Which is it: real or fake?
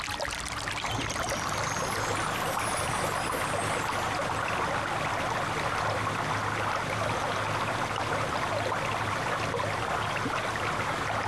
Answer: real